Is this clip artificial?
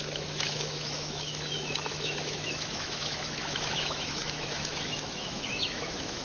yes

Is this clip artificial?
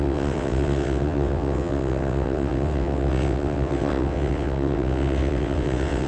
yes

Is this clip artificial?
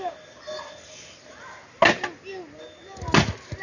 no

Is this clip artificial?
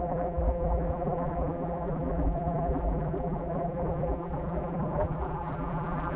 yes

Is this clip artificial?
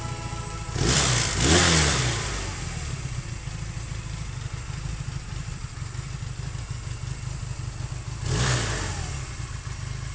no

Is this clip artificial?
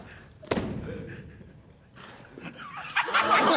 no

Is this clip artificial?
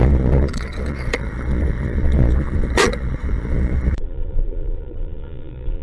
yes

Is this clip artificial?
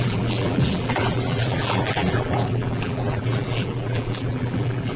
yes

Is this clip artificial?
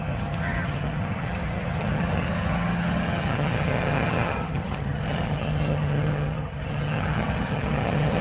yes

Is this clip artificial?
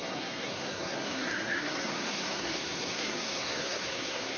yes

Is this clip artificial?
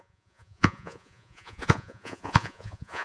yes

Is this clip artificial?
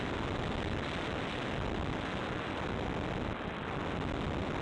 no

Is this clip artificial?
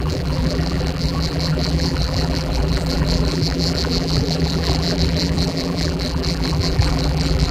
yes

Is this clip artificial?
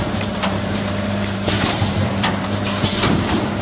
yes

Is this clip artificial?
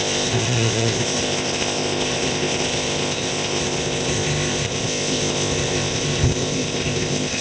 yes